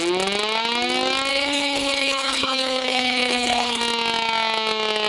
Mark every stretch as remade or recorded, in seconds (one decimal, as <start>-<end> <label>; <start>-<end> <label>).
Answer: 0.0-1.3 recorded; 1.3-3.8 remade; 3.8-5.1 recorded